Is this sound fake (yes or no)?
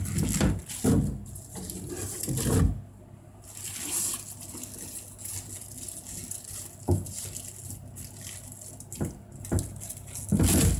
no